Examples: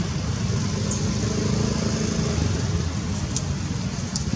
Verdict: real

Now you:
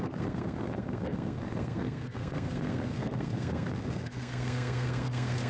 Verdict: fake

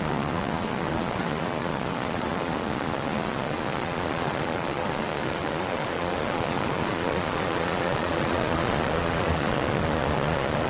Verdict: fake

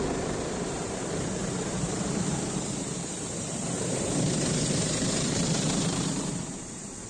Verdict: fake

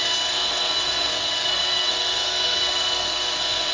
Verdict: fake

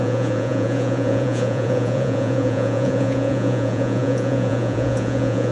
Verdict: fake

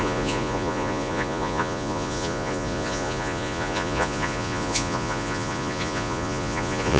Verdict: fake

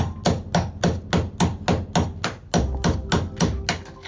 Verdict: real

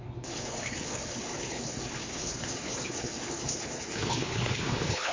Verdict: fake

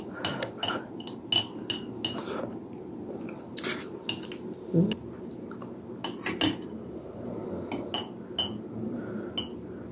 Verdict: real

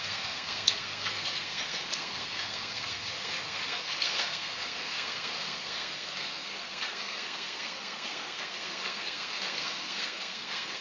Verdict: fake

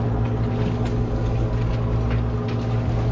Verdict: real